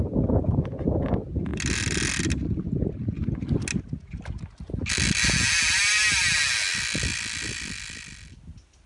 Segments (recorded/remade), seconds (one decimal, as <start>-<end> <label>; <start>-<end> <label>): 0.0-8.9 recorded